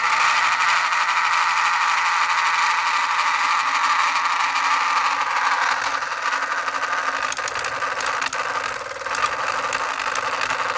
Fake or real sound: real